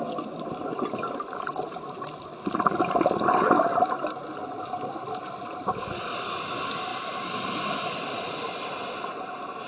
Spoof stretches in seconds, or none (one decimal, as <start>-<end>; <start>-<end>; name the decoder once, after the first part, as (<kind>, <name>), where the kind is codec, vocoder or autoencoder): none